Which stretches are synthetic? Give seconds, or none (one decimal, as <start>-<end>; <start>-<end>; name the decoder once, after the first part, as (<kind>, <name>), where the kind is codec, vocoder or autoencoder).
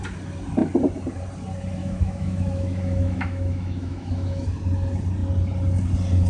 1.8-4.5 (autoencoder, DAC-VAE)